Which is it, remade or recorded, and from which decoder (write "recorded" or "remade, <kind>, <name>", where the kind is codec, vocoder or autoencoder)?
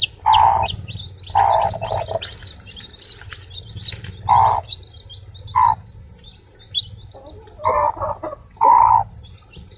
recorded